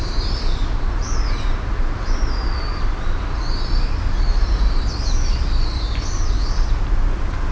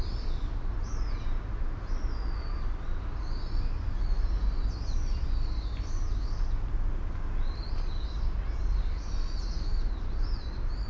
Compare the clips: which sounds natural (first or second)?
second